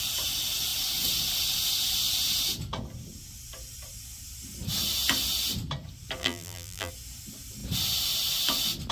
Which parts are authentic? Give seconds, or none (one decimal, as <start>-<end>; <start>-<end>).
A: 0.0-6.2; 6.9-8.9